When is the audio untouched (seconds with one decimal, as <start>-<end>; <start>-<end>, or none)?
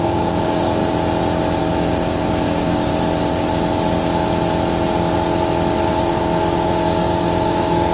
0.8-1.6; 2.9-5.9